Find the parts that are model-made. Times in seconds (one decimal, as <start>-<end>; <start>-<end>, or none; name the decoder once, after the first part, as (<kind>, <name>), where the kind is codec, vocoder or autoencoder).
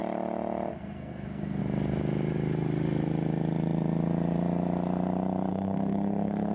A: 0.7-1.6 (codec, SNAC); 5.5-6.5